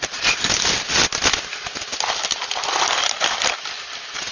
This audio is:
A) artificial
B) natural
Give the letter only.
B